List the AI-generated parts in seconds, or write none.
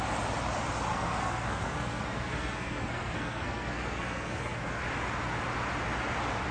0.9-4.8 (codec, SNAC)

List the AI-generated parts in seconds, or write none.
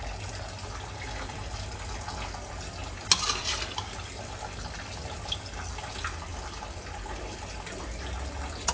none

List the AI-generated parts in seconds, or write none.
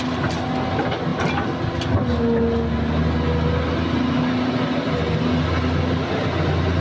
none